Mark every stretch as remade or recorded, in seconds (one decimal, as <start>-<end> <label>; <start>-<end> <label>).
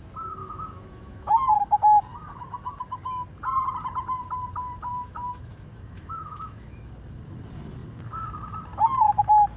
0.0-0.4 recorded; 0.4-1.5 remade; 1.5-4.9 recorded; 4.9-6.9 remade; 6.9-9.6 recorded